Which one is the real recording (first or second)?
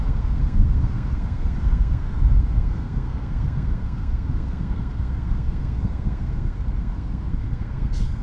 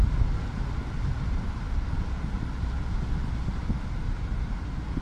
second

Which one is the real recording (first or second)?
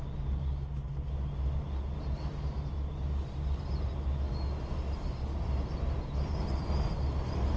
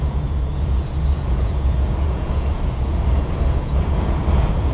first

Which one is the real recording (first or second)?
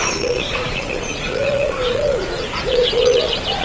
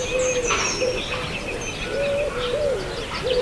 second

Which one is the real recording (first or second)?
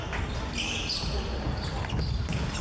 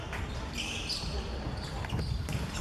first